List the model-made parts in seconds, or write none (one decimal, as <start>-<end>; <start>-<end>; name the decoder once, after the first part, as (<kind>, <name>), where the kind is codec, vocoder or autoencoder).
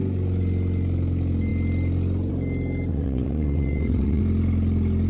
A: 2.9-4.2 (vocoder, WaveNeXt)